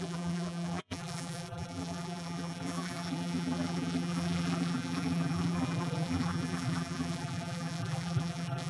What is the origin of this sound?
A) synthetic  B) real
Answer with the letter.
A